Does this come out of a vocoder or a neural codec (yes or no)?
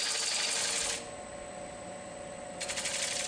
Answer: no